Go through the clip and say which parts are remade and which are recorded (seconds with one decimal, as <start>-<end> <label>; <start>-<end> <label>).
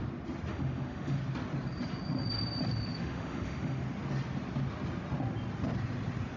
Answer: 0.0-0.5 recorded; 0.5-1.2 remade; 1.2-3.0 recorded; 3.0-3.8 remade; 3.8-6.4 recorded